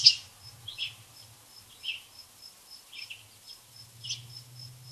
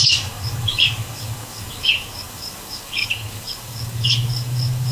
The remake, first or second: second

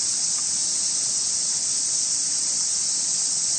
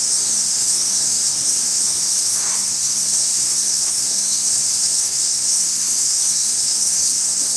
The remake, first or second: second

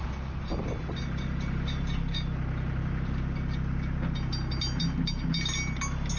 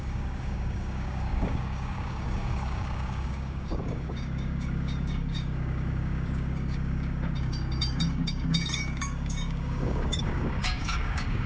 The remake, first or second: second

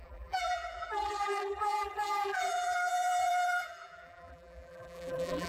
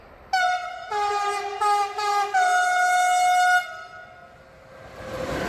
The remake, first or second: first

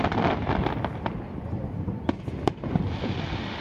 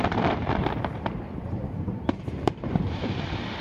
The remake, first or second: second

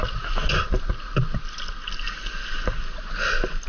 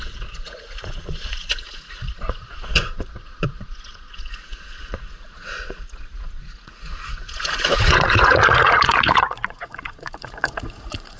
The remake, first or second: second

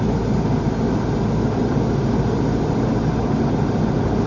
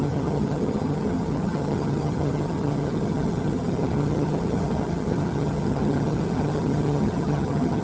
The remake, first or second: second